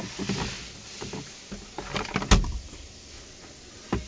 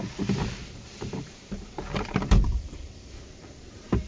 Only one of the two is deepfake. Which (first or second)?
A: second